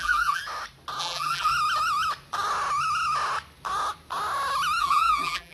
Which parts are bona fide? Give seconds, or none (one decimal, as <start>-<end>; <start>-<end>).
0.4-1.0; 1.5-4.8